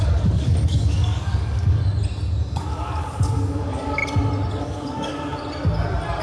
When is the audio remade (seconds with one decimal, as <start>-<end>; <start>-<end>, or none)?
0.0-1.8; 2.7-4.0; 4.6-5.1